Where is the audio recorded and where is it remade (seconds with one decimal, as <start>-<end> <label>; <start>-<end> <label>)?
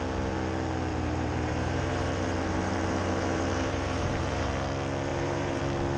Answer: 0.0-0.9 recorded; 0.9-4.5 remade; 4.5-5.1 recorded; 5.1-5.6 remade; 5.6-6.0 recorded